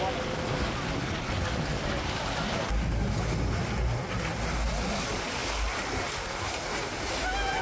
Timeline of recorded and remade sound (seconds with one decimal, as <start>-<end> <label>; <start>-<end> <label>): 0.0-7.6 recorded